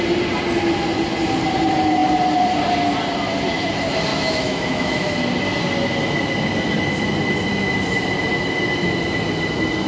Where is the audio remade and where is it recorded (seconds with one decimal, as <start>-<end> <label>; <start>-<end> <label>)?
0.0-4.1 recorded; 4.1-5.1 remade; 5.1-9.9 recorded